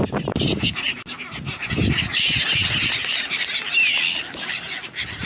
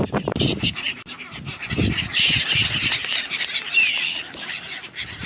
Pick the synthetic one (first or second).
second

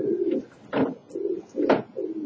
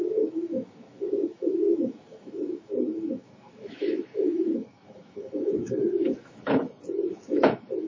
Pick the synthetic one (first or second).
second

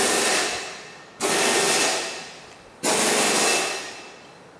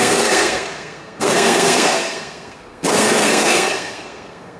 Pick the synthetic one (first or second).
second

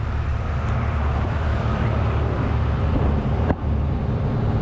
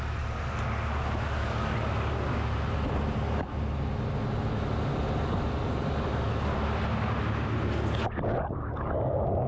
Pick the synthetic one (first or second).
first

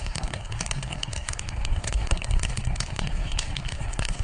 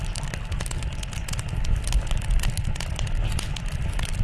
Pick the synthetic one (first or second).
first